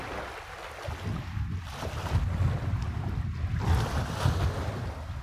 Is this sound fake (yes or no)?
no